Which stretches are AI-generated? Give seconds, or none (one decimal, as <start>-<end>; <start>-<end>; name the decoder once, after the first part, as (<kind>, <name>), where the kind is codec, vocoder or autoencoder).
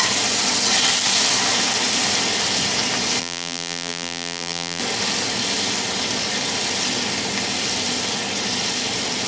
3.2-4.8 (vocoder, BigVGAN v2)